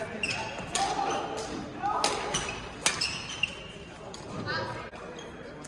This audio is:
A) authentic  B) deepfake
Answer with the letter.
A